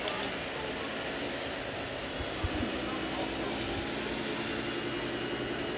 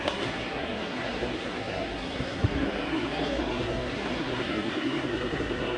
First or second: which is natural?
first